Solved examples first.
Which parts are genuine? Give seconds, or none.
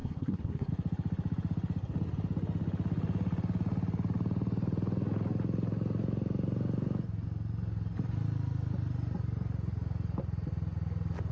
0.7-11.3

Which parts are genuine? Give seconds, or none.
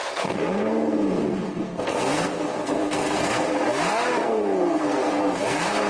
3.5-4.2